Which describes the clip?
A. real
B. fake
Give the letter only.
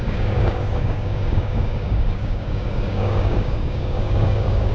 B